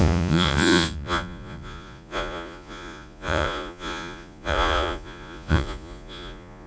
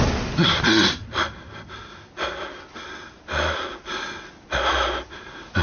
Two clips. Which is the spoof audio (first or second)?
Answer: first